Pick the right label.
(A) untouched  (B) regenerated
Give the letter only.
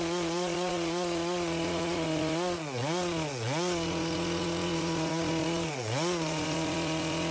B